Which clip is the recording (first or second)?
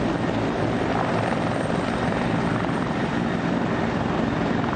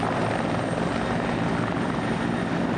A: second